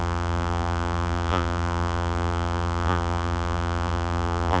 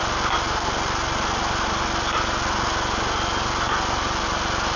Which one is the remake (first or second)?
first